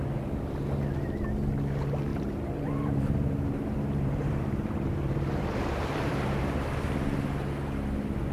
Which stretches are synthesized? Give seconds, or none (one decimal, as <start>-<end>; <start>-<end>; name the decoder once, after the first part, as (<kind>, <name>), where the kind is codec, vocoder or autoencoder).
2.1-6.4 (vocoder, BigVGAN v2)